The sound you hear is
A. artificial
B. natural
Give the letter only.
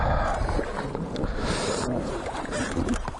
A